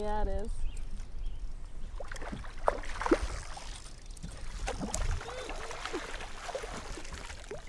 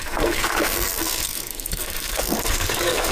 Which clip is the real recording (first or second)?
first